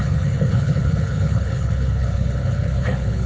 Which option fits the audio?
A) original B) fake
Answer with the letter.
B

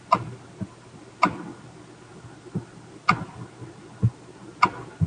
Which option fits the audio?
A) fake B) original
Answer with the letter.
B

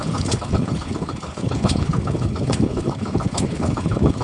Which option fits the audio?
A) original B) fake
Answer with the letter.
B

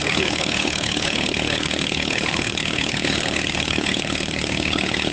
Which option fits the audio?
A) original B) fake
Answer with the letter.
B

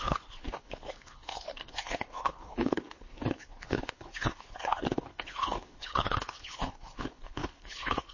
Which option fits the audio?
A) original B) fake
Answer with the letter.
B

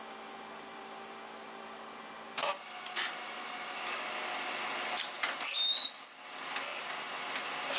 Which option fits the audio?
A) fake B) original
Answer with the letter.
B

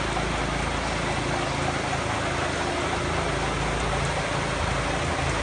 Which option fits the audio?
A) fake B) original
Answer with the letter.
B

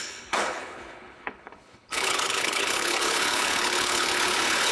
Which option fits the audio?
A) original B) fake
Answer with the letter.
B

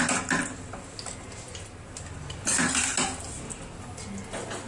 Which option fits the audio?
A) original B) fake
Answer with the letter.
A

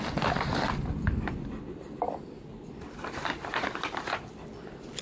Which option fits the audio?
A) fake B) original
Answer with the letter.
B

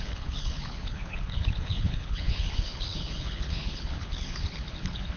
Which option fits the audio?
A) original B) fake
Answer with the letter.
B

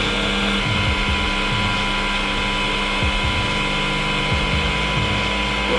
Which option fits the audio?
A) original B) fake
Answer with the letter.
A